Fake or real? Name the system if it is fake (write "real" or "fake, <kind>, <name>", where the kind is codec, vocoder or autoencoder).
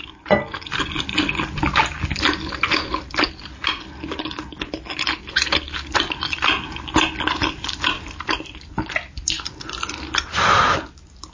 real